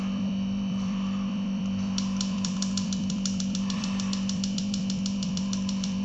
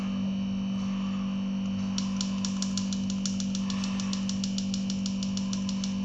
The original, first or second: second